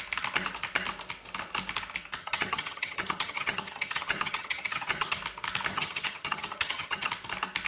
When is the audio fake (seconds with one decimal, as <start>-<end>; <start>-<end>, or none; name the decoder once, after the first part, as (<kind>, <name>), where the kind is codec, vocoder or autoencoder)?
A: 2.2-5.2 (vocoder, HiFi-GAN); 5.7-7.1